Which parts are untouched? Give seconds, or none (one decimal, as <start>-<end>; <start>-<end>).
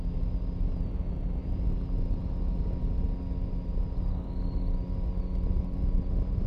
0.0-6.5